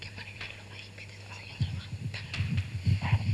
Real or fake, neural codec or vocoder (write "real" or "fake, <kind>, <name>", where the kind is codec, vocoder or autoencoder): real